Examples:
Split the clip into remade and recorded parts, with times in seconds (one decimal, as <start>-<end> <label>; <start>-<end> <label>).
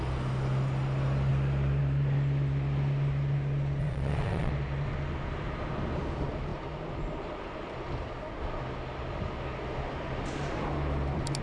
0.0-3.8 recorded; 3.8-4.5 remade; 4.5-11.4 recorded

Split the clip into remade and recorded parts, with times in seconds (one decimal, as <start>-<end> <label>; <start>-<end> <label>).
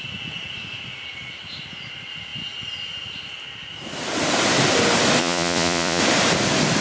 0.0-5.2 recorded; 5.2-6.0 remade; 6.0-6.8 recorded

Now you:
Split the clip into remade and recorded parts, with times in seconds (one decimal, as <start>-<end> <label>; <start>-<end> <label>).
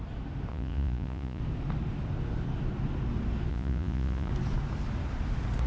0.0-0.5 recorded; 0.5-1.4 remade; 1.4-3.5 recorded; 3.5-4.3 remade; 4.3-5.7 recorded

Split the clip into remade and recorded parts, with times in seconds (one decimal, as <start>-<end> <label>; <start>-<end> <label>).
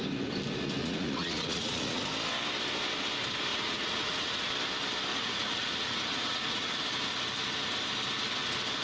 0.0-0.8 recorded; 0.8-2.0 remade; 2.0-3.5 recorded; 3.5-4.5 remade; 4.5-5.1 recorded; 5.1-6.8 remade; 6.8-8.8 recorded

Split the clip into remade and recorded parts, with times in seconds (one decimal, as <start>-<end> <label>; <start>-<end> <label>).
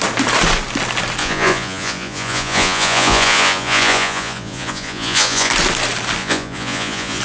0.0-1.2 recorded; 1.2-5.5 remade; 5.5-6.2 recorded; 6.2-7.2 remade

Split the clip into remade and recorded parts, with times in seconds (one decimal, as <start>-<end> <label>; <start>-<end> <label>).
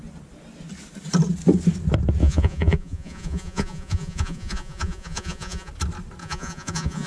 0.0-2.2 recorded; 2.2-5.7 remade; 5.7-6.2 recorded; 6.2-7.1 remade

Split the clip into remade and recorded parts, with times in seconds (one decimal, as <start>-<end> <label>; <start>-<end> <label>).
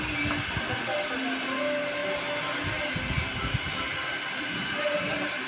0.0-5.5 recorded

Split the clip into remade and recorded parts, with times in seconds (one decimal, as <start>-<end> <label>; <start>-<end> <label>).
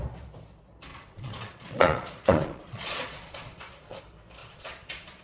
0.0-0.9 recorded; 0.9-4.0 remade; 4.0-4.4 recorded; 4.4-5.2 remade